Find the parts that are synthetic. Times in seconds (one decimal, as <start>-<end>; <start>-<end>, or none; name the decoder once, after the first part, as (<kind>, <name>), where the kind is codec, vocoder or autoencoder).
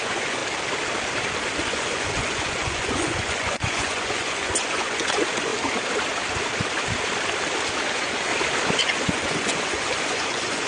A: 0.0-0.4 (vocoder, Vocos); 1.5-5.5; 7.9-8.3; 8.8-10.7